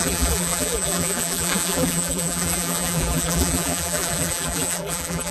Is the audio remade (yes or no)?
yes